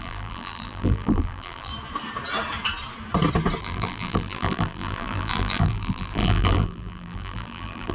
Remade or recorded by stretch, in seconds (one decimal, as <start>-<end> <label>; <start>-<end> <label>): 0.0-1.7 remade; 1.7-3.6 recorded; 3.6-7.9 remade